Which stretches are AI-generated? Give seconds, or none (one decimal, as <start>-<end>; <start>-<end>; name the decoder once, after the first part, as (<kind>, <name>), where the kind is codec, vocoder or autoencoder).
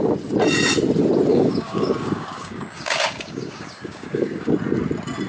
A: 1.3-4.5 (codec, DAC)